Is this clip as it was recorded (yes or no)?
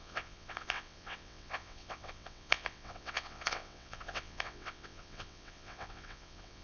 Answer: no